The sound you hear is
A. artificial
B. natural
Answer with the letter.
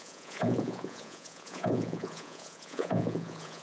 A